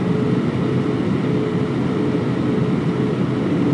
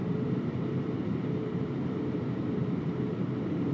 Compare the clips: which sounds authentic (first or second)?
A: first